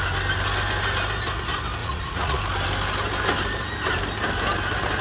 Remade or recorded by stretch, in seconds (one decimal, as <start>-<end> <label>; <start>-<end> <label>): 0.0-1.8 recorded; 1.8-2.4 remade; 2.4-5.0 recorded